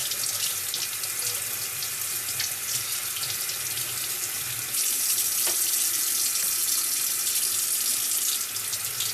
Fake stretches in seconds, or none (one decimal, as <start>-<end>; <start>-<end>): none